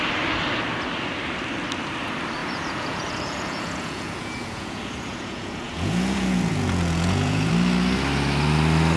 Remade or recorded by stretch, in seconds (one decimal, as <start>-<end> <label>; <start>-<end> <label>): 0.0-2.4 recorded; 2.4-7.5 remade; 7.5-9.0 recorded